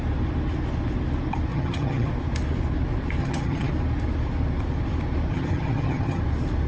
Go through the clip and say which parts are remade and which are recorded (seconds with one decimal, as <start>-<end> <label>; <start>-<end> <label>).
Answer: 0.0-1.5 recorded; 1.5-2.1 remade; 2.1-3.2 recorded; 3.2-3.7 remade; 3.7-5.3 recorded; 5.3-6.2 remade; 6.2-6.7 recorded